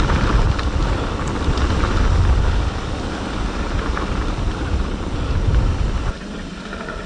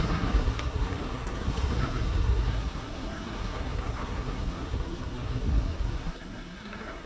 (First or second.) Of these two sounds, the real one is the first